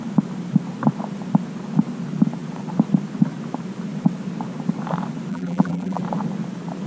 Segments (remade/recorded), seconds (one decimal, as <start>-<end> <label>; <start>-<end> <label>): 0.0-5.3 recorded; 5.3-6.0 remade; 6.0-6.9 recorded